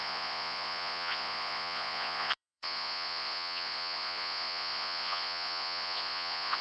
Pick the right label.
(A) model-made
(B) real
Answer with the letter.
A